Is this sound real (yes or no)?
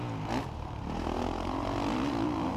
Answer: yes